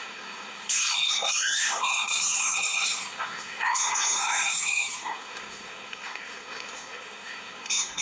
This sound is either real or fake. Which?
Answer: fake